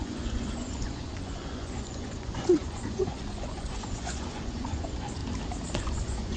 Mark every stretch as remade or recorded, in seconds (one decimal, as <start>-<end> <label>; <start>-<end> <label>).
0.0-5.2 remade; 5.2-5.8 recorded; 5.8-6.4 remade